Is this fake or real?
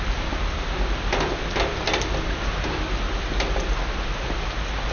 real